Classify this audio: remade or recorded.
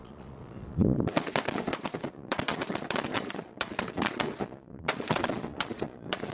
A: remade